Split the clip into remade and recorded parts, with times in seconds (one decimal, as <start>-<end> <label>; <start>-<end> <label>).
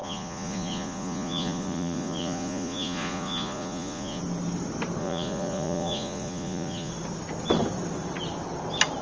0.0-4.2 remade; 4.2-5.0 recorded; 5.0-6.9 remade; 6.9-9.0 recorded